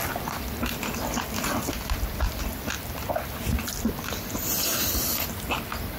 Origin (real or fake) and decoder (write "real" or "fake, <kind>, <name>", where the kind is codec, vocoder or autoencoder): real